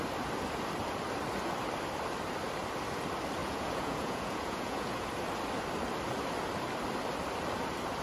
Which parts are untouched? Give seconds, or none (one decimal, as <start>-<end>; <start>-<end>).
0.0-3.4; 5.1-8.0